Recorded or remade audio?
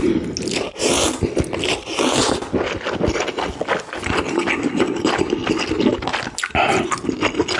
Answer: recorded